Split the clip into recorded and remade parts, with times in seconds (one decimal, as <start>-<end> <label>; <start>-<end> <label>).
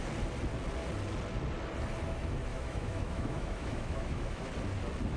0.0-2.5 recorded; 2.5-4.5 remade; 4.5-5.2 recorded